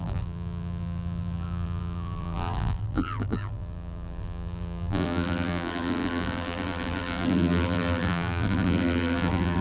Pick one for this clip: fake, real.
fake